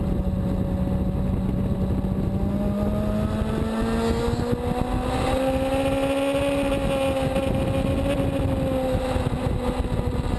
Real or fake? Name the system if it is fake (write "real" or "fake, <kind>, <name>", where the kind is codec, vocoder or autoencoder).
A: real